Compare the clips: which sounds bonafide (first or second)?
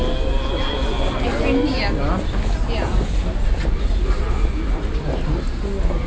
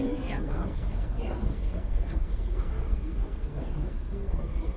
first